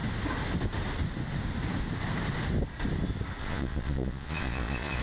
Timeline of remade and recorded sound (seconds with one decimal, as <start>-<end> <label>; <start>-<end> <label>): 0.0-3.4 recorded; 3.4-5.0 remade